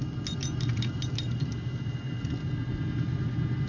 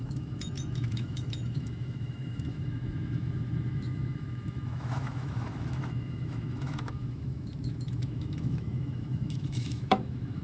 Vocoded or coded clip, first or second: second